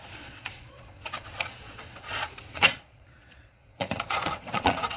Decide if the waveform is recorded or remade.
remade